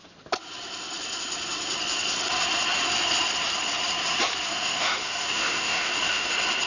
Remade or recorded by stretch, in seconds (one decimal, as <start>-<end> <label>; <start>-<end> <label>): 0.0-4.5 recorded; 4.5-6.3 remade; 6.3-6.7 recorded